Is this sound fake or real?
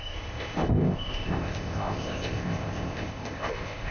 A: fake